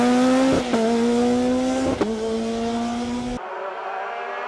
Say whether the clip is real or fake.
real